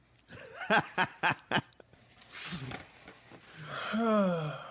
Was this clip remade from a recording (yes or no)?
no